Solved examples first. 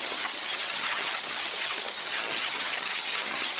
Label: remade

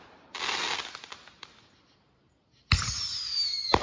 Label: recorded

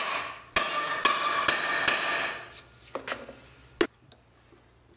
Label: recorded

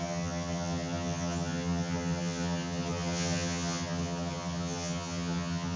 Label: remade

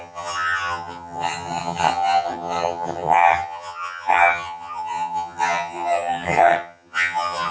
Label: remade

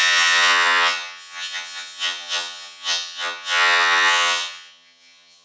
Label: remade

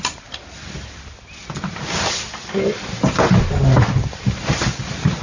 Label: recorded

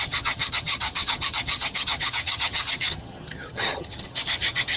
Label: remade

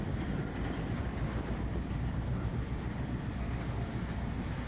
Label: recorded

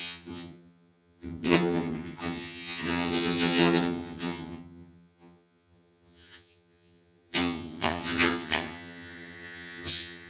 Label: remade